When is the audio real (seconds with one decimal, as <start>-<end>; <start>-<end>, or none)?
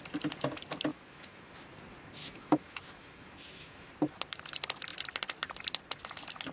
0.0-0.9; 1.5-2.2; 3.9-6.5